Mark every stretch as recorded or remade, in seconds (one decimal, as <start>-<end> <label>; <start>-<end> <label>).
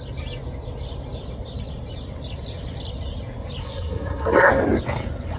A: 0.0-3.6 recorded; 3.6-4.5 remade; 4.5-5.4 recorded